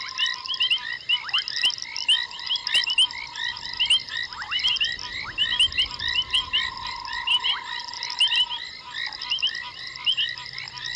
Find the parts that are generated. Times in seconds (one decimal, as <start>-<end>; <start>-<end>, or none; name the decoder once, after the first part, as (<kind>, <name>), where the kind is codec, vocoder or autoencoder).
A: none